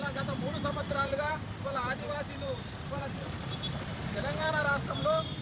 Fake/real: fake